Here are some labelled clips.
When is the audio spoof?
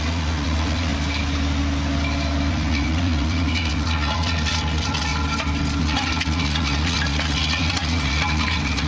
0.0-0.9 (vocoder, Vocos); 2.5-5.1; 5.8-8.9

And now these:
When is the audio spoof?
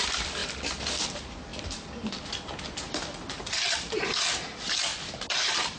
none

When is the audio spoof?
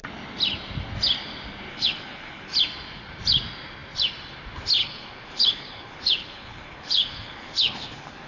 1.7-2.5 (codec, HILCodec); 4.8-8.3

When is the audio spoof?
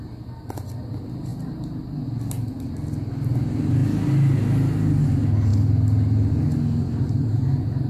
1.3-1.8 (vocoder, BigVGAN v2); 7.2-7.9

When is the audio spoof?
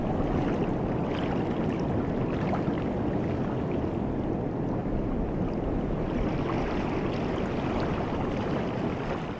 none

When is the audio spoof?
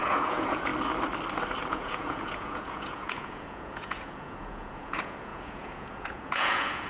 0.0-0.7 (vocoder, Vocos); 1.7-6.9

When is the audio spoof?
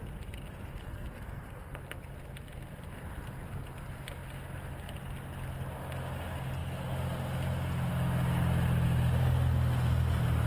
0.8-1.8 (codec, SNAC)